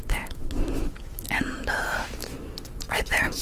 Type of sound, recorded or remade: remade